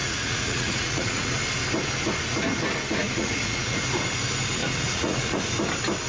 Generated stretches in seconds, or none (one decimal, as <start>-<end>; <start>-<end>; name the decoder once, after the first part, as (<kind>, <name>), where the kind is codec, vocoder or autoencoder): 0.0-1.3 (vocoder, Vocos); 3.0-3.8; 4.6-5.4